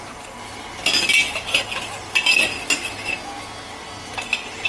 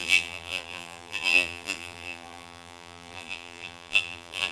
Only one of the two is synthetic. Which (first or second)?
second